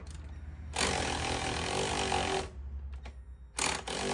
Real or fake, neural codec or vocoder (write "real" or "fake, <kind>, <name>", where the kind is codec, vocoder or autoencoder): real